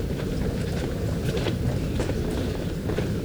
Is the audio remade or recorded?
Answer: remade